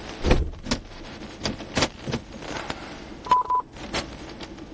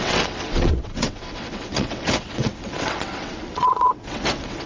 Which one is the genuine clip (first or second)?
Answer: first